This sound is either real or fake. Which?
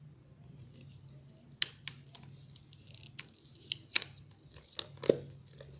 real